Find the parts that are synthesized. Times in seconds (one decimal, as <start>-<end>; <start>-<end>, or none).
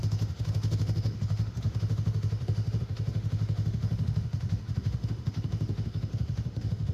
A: 0.0-6.9